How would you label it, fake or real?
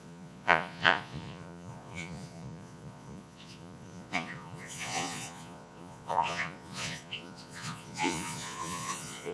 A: fake